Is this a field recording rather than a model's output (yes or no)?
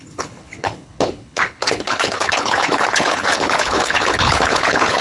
no